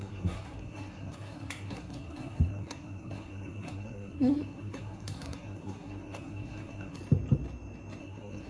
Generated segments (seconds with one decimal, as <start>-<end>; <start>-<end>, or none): 0.0-7.0; 8.0-8.5